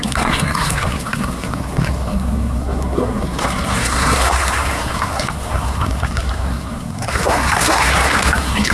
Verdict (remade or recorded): remade